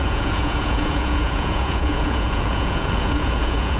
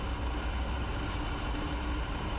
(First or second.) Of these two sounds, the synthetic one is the first